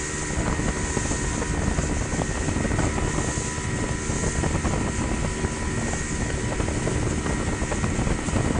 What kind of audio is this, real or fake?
real